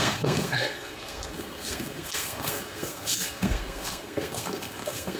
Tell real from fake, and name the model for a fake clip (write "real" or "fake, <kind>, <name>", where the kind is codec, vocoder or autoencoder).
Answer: fake, codec, SNAC